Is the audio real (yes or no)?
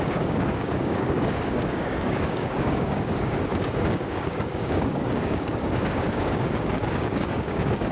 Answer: no